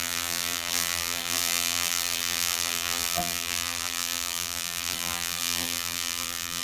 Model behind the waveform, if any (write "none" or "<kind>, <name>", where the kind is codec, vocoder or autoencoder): vocoder, BigVGAN v2